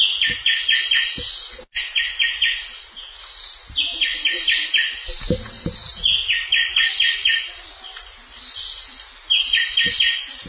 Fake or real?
real